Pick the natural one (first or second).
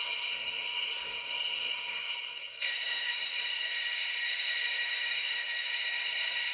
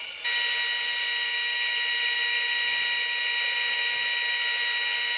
second